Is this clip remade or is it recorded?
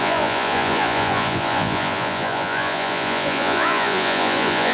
remade